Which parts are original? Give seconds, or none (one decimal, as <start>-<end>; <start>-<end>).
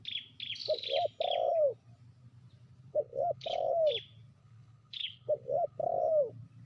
0.0-2.9; 3.9-4.4; 6.1-6.7